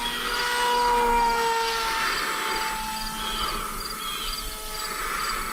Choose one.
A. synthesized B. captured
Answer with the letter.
B